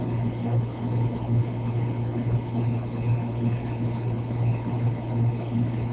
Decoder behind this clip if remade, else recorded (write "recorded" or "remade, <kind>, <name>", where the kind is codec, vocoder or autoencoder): remade, codec, HILCodec